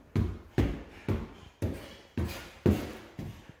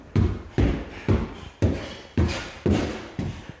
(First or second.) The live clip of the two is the first